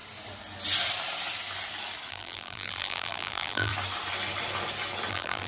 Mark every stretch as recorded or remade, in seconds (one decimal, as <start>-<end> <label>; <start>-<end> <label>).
0.0-2.1 recorded; 2.1-3.7 remade; 3.7-5.1 recorded; 5.1-5.5 remade